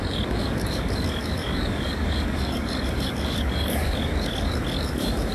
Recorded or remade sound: remade